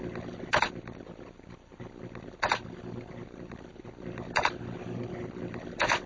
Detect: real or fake real